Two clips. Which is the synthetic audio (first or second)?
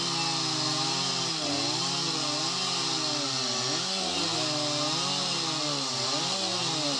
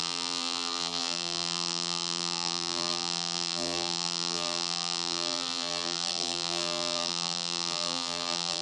second